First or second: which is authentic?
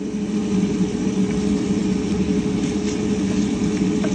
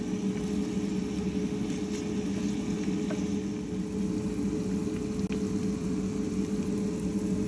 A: second